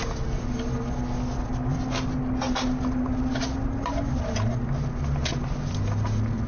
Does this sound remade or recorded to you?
recorded